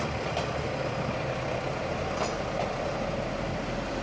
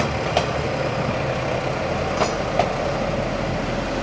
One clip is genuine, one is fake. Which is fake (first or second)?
first